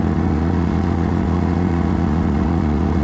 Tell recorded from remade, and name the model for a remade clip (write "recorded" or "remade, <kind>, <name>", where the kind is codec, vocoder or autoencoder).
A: remade, vocoder, Vocos